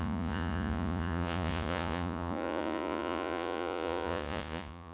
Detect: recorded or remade remade